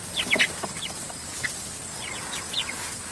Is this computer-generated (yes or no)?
no